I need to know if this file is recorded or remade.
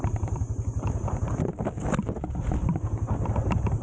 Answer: recorded